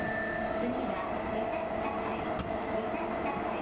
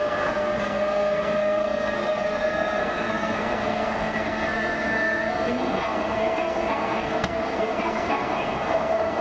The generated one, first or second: second